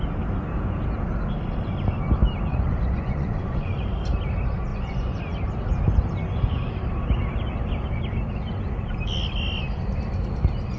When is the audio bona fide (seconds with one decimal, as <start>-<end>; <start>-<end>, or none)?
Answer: 0.0-2.5; 3.8-4.7; 5.2-10.8